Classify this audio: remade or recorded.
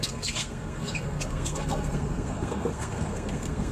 remade